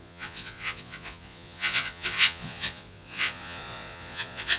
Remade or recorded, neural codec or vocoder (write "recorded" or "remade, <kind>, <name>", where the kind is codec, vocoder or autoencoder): remade, vocoder, Vocos